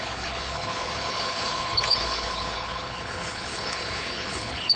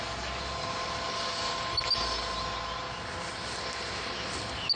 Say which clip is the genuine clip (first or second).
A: second